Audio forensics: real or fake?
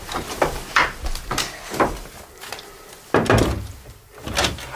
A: real